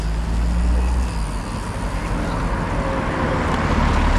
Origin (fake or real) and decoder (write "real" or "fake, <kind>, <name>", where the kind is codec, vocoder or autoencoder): real